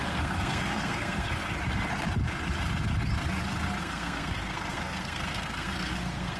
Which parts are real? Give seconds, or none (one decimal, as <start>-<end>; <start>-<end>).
1.4-3.8